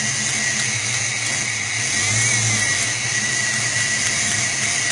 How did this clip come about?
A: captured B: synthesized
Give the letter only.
A